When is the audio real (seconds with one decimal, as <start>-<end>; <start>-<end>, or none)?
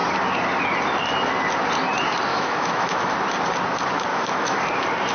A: 0.0-2.3; 3.1-4.1; 4.6-5.1